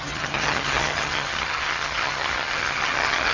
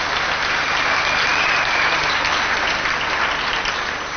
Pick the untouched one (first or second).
second